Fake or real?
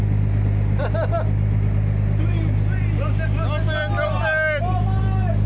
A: real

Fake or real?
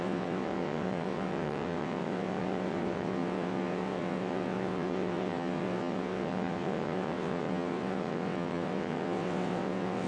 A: fake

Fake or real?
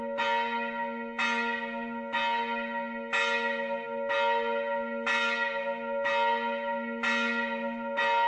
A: real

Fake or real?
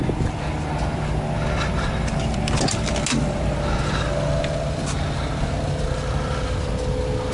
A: real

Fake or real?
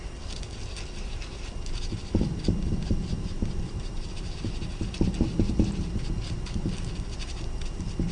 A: real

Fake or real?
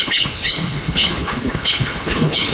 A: fake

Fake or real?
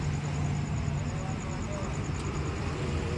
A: real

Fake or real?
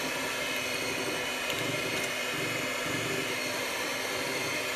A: real